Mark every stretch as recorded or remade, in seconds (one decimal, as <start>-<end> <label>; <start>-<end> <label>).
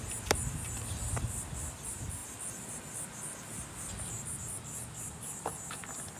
0.0-2.2 remade; 2.2-4.4 recorded; 4.4-6.2 remade